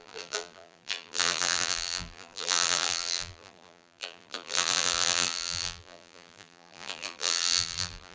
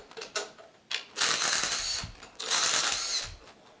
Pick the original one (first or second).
second